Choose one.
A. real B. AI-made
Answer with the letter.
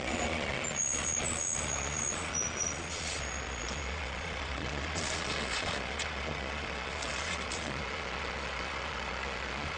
B